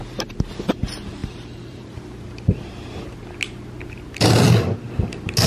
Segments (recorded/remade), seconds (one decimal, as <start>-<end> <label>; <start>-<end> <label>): 0.0-1.2 recorded; 1.2-3.0 remade; 3.0-5.5 recorded